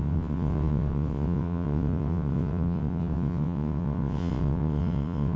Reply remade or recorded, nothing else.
remade